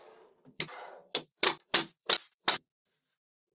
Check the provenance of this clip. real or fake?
fake